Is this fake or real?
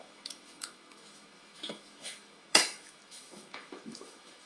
fake